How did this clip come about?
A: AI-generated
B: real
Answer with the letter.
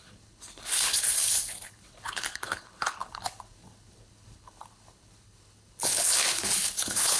A